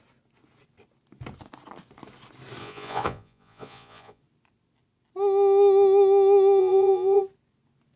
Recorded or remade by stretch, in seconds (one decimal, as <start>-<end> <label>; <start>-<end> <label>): 0.0-2.6 recorded; 2.6-4.2 remade; 4.2-6.6 recorded; 6.6-7.2 remade; 7.2-8.0 recorded